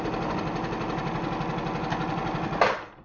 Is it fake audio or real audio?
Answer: real